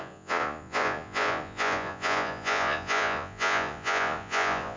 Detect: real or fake fake